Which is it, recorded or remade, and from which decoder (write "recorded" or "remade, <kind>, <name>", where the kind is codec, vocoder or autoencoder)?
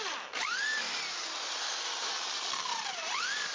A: remade, vocoder, BigVGAN v2